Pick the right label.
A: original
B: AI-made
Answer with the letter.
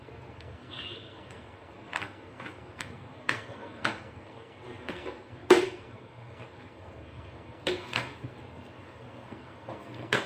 B